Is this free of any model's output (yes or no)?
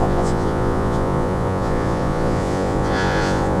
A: no